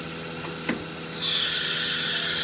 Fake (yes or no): no